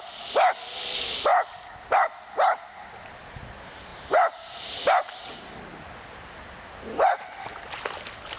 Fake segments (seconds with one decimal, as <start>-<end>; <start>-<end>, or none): 3.9-7.6